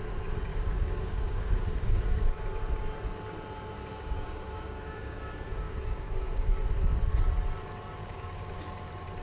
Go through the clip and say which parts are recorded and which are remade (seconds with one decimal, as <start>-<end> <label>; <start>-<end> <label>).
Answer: 0.0-0.5 recorded; 0.5-2.4 remade; 2.4-3.9 recorded; 3.9-6.4 remade; 6.4-8.0 recorded; 8.0-8.6 remade; 8.6-9.2 recorded